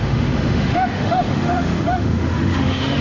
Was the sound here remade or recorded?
remade